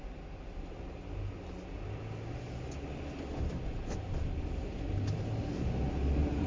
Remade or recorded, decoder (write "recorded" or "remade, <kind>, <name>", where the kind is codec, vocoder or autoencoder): recorded